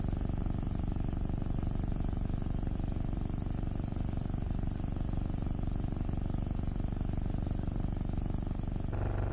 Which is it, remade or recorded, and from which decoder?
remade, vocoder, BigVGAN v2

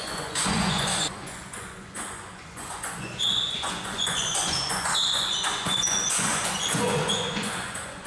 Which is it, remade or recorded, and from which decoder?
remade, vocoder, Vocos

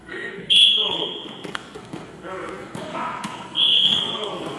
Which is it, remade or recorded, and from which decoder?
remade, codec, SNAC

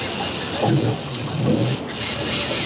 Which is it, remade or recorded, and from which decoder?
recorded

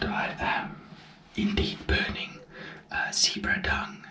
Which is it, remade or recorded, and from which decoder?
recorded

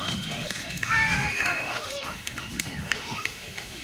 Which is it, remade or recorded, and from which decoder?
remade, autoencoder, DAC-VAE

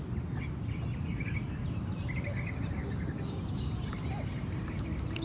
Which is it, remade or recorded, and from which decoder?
recorded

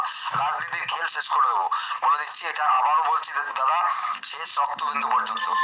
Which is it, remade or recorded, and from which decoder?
recorded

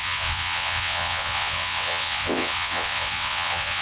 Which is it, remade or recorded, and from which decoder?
remade, vocoder, WaveNeXt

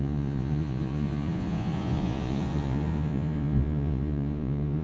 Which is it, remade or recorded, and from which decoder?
remade, vocoder, Vocos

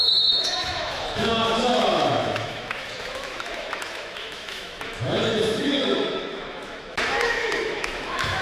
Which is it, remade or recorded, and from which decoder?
remade, autoencoder, DAC-VAE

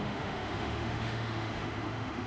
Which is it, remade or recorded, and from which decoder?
remade, autoencoder, DAC-VAE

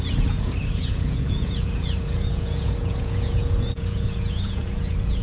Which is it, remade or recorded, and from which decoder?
remade, vocoder, Vocos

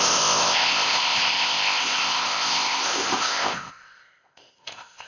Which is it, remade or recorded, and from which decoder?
remade, codec, ZipCodec